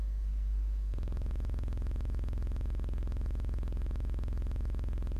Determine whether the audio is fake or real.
fake